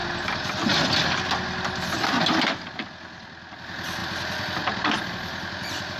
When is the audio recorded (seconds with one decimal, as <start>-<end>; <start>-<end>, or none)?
0.0-6.0